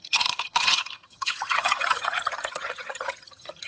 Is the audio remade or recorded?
remade